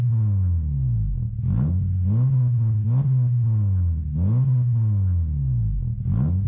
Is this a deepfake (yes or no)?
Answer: no